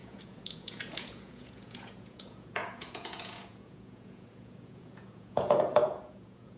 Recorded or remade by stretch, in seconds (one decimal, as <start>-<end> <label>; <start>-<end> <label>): 0.0-6.6 remade